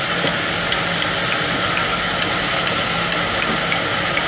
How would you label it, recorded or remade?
recorded